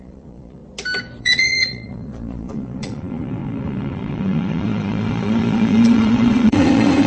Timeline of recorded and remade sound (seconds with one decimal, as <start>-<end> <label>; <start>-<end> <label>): 0.0-0.6 remade; 0.6-1.2 recorded; 1.2-7.1 remade